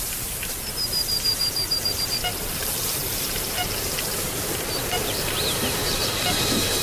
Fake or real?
fake